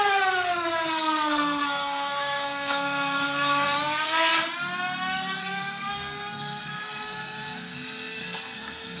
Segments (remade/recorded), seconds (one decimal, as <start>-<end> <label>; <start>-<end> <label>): 0.0-4.3 remade; 4.3-5.4 recorded; 5.4-9.0 remade